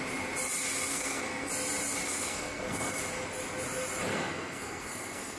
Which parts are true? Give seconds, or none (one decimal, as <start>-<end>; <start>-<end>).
0.0-0.9; 1.5-2.0; 3.0-4.1